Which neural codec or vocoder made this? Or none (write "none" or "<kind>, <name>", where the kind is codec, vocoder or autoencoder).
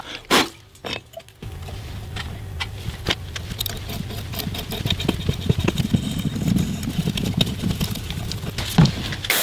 none